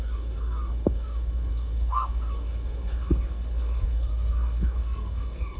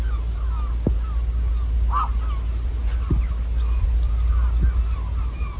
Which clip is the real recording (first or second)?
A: second